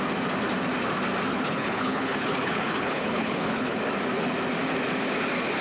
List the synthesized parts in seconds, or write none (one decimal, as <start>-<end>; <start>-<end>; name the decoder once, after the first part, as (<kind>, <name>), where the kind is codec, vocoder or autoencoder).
1.3-3.8 (codec, HILCodec)

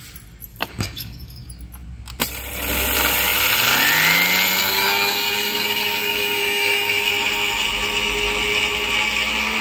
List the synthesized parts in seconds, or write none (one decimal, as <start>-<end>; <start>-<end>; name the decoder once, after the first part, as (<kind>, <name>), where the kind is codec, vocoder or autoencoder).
0.5-1.5 (codec, DAC); 4.6-7.1

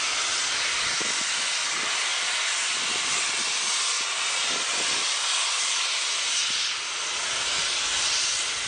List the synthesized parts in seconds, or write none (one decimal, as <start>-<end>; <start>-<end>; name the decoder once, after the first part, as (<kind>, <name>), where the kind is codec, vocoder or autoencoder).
none

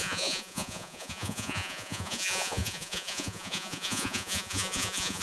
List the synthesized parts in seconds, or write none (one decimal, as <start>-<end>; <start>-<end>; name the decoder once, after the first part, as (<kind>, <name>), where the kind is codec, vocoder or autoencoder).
0.0-5.2 (vocoder, Vocos)

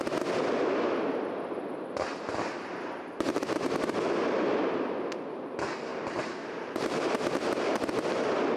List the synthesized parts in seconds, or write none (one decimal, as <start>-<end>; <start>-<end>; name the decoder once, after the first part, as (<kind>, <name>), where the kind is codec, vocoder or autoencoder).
5.9-7.0 (vocoder, BigVGAN v2)

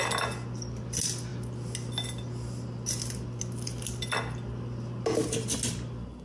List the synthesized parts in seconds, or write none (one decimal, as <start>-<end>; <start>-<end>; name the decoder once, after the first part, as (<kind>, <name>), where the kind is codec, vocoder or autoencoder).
none